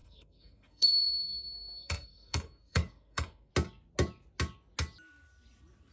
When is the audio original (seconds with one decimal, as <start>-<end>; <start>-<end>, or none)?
3.5-5.9